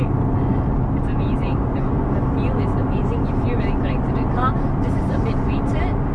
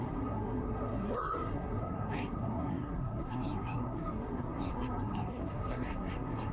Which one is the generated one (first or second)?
second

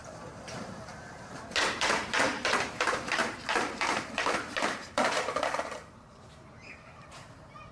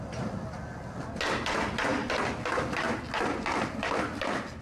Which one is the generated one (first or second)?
first